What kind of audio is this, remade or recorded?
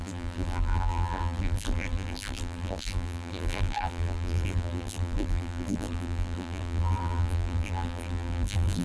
remade